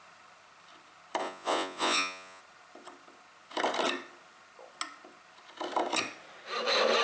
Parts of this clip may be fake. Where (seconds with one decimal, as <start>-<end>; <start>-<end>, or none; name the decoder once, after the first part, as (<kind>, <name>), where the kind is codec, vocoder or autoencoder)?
1.2-2.4 (vocoder, Vocos)